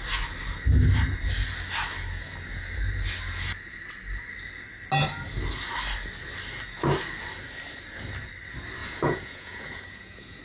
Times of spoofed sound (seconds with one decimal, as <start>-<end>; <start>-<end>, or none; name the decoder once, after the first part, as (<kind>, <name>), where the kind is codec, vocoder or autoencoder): 8.8-10.4 (vocoder, Vocos)